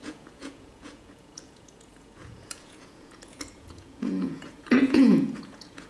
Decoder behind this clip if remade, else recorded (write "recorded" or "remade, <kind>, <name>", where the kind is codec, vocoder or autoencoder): remade, vocoder, Vocos